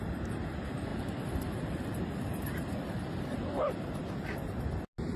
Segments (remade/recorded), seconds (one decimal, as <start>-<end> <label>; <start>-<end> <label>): 0.0-0.9 recorded; 0.9-4.0 remade; 4.0-5.2 recorded